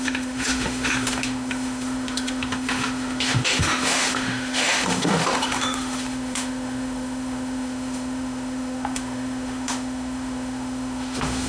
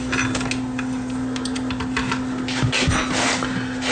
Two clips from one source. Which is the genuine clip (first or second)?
second